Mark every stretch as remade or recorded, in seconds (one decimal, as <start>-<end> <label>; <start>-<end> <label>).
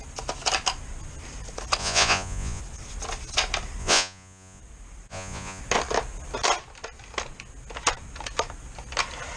0.0-1.8 recorded; 1.8-2.6 remade; 2.6-3.8 recorded; 3.8-4.6 remade; 4.6-5.1 recorded; 5.1-5.6 remade; 5.6-9.4 recorded